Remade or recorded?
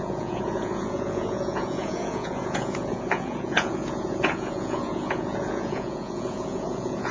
remade